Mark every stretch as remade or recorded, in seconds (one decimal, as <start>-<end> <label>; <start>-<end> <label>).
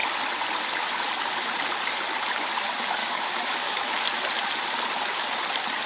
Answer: 0.0-3.0 recorded; 3.0-3.8 remade; 3.8-5.8 recorded